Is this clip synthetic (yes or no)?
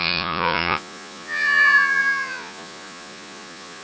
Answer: yes